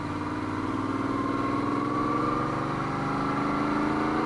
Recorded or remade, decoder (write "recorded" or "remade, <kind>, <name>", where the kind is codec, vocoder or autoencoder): recorded